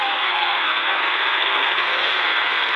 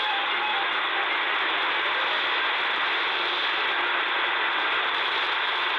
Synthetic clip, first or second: first